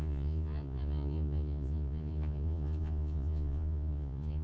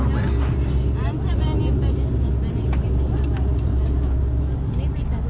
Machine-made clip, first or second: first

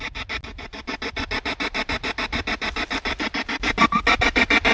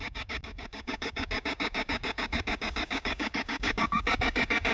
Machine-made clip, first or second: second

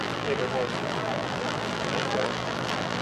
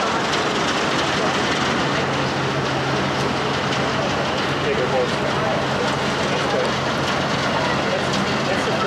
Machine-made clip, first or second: first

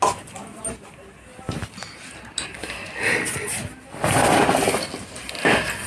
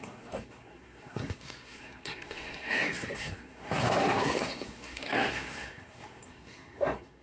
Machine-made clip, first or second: second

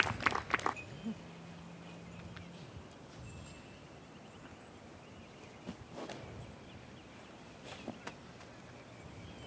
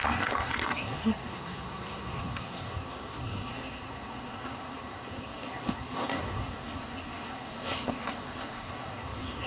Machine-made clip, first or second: second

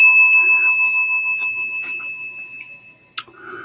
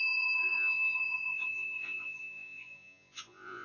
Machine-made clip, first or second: second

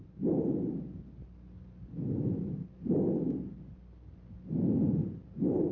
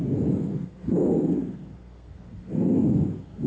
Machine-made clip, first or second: second